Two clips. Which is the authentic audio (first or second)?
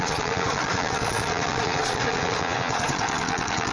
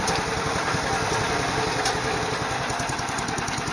second